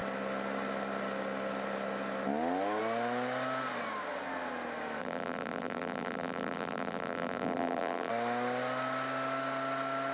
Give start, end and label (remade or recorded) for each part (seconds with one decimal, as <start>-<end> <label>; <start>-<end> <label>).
0.0-5.0 recorded; 5.0-8.1 remade; 8.1-10.1 recorded